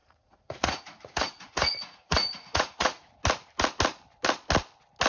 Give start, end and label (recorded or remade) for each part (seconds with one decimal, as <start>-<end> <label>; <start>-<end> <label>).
0.0-3.1 remade; 3.1-5.1 recorded